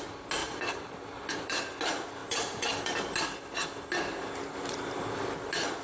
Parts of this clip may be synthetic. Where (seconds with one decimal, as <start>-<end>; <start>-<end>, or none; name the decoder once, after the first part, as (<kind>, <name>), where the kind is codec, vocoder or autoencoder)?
0.4-1.6 (vocoder, BigVGAN v2); 2.2-2.8